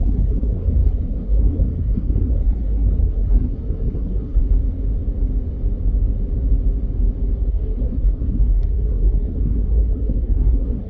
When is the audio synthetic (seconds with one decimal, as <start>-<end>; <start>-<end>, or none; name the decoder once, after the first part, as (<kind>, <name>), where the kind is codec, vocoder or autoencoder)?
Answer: 0.0-4.4 (codec, SNAC); 7.5-10.9